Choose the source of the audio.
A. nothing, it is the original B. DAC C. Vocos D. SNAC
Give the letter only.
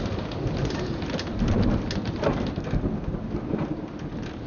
A